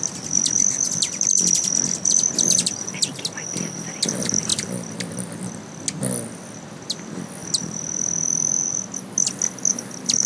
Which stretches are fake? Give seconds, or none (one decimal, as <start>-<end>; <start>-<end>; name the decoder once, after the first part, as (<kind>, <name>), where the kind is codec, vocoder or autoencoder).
none